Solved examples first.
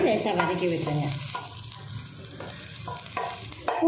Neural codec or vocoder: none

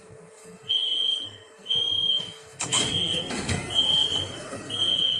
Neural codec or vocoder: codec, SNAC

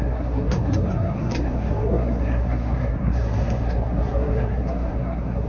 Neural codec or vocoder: codec, SNAC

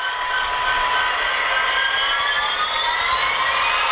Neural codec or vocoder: none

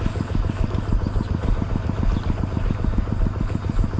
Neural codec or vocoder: none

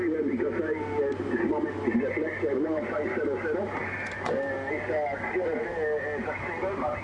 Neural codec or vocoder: none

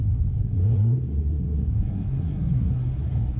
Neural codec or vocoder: codec, SNAC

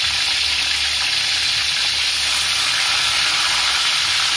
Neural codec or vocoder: none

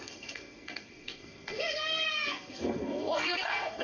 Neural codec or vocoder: codec, SNAC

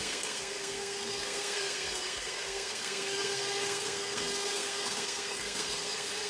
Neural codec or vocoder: codec, SNAC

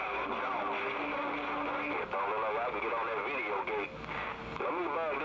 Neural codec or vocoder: none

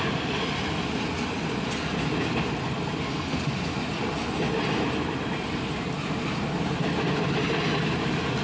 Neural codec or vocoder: none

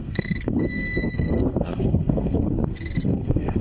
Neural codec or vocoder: codec, SNAC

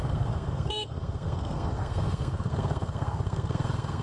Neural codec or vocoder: codec, SNAC